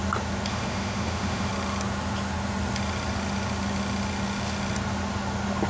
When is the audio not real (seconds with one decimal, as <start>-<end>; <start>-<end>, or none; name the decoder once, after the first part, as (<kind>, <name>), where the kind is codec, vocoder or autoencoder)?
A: 0.5-1.5 (autoencoder, DAC-VAE)